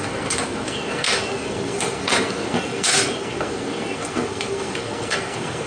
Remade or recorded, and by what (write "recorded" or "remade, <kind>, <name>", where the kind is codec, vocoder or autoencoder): remade, codec, SNAC